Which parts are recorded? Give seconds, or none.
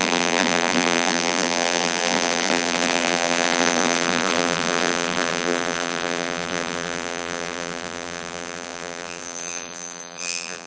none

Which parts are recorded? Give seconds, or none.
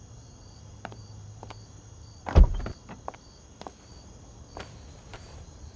1.4-4.7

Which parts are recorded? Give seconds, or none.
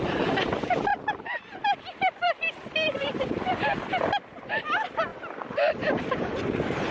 none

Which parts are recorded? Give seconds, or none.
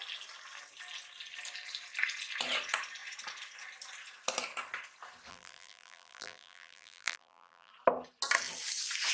0.0-5.3; 7.7-9.1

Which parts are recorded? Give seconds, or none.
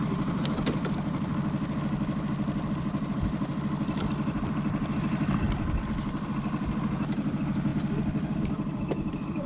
1.3-2.8; 3.5-4.4; 7.7-8.4